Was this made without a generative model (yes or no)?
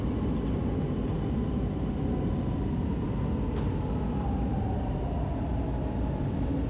yes